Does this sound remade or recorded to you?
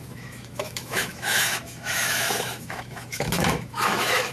remade